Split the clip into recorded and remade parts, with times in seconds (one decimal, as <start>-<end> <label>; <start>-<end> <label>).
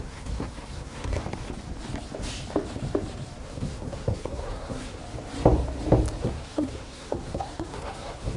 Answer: 0.0-1.2 remade; 1.2-3.4 recorded; 3.4-5.0 remade; 5.0-6.2 recorded; 6.2-8.4 remade